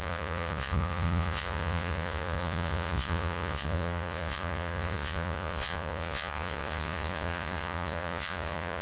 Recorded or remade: remade